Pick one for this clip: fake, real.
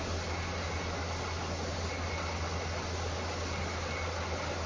real